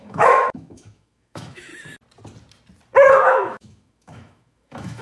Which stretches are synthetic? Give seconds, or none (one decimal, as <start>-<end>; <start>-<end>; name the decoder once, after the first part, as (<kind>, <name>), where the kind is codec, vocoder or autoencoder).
0.0-1.7 (autoencoder, DAC-VAE); 3.3-5.0